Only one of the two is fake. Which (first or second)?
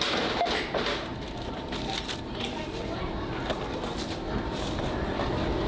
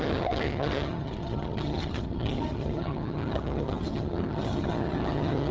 second